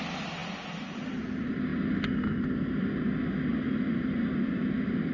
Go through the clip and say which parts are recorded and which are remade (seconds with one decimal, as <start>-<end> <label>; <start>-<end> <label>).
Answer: 0.0-5.1 recorded